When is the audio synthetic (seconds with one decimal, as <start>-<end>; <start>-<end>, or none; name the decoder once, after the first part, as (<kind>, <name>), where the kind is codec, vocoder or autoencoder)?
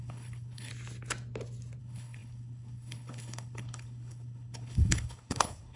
0.0-0.7 (codec, HILCodec); 1.8-5.8